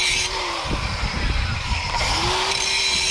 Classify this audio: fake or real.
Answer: fake